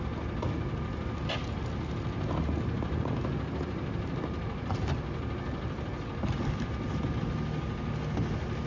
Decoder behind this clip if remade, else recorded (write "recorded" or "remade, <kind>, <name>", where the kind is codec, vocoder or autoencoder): recorded